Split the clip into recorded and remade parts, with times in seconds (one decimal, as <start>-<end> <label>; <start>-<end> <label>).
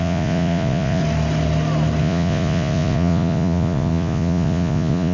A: 0.0-1.0 remade; 1.0-2.0 recorded; 2.0-5.1 remade